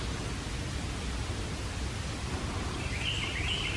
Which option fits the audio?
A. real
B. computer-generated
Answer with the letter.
A